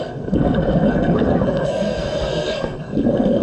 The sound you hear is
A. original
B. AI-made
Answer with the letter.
B